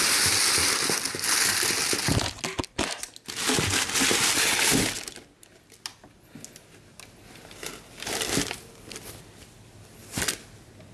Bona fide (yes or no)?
yes